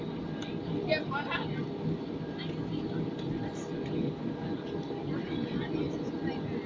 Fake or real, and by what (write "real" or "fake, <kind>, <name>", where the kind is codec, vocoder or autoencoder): real